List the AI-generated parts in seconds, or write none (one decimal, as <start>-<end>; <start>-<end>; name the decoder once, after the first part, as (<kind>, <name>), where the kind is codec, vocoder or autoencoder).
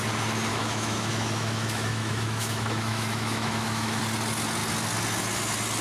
0.5-4.0 (autoencoder, DAC-VAE)